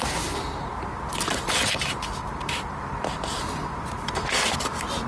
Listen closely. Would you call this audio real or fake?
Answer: fake